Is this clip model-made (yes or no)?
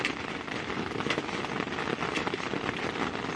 no